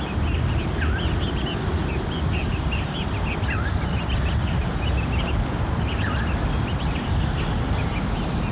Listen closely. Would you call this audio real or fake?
real